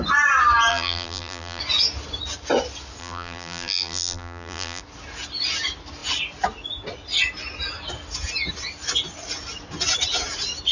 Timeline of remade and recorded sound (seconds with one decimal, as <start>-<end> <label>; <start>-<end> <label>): 0.0-0.7 recorded; 0.7-1.6 remade; 1.6-3.0 recorded; 3.0-4.8 remade; 4.8-10.7 recorded